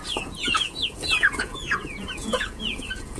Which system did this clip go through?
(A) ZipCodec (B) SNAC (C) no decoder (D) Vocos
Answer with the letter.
D